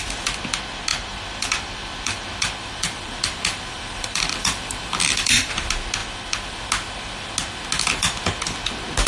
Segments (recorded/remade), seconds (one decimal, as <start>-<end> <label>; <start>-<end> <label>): 0.0-0.9 recorded; 0.9-5.5 remade; 5.5-6.0 recorded; 6.0-6.6 remade; 6.6-9.1 recorded